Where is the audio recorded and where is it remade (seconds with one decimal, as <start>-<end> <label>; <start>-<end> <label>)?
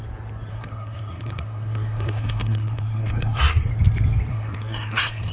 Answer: 0.0-0.5 recorded; 0.5-3.7 remade; 3.7-4.3 recorded; 4.3-5.3 remade